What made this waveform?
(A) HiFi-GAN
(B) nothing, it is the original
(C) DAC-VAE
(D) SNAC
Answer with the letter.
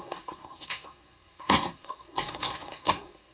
D